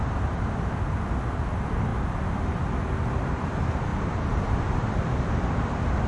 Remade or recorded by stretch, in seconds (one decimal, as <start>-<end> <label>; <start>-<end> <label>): 0.0-3.9 recorded; 3.9-4.9 remade; 4.9-6.1 recorded